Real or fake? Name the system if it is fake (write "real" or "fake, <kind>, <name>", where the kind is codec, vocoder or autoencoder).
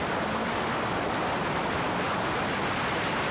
real